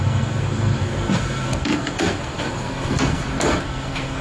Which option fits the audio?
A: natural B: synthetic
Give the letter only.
B